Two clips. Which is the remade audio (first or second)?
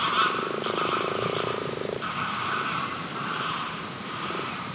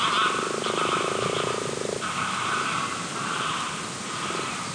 first